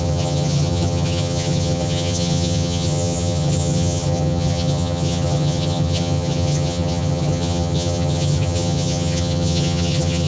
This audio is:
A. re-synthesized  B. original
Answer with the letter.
A